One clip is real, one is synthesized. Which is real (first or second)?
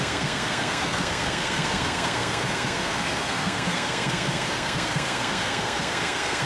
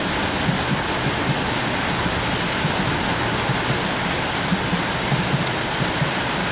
second